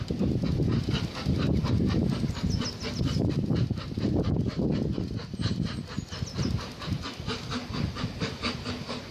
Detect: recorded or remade recorded